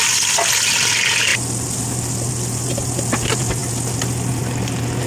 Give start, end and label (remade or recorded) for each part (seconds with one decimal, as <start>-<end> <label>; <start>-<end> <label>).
0.0-5.1 recorded